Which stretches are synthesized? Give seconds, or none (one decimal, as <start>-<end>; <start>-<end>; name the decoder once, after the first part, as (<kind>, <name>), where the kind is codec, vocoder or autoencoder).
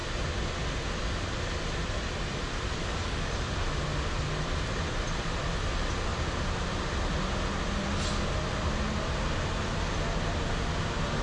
2.8-3.3 (codec, DAC)